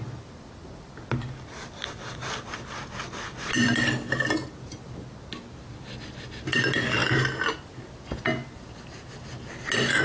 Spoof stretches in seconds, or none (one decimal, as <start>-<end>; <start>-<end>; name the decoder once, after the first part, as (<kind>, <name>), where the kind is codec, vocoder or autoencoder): 1.5-4.1 (vocoder, BigVGAN v2)